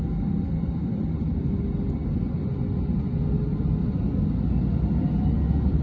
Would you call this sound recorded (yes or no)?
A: yes